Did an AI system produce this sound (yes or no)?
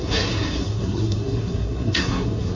yes